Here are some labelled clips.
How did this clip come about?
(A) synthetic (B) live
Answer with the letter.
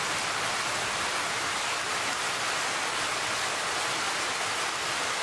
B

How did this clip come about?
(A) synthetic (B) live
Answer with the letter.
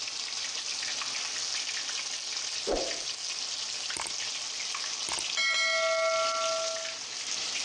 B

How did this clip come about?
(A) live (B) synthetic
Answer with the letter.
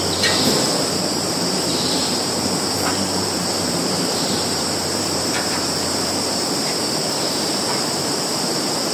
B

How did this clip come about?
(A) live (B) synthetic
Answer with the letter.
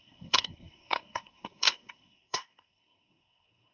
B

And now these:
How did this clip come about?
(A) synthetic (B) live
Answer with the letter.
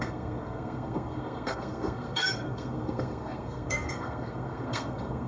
A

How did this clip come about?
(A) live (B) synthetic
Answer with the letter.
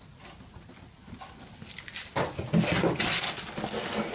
A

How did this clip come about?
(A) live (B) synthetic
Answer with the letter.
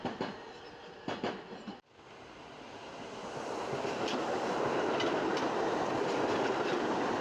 A